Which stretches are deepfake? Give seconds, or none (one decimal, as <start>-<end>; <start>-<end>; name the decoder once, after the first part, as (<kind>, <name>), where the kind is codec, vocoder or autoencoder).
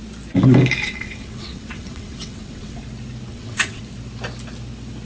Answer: 0.8-2.8 (vocoder, WaveNeXt); 3.3-3.8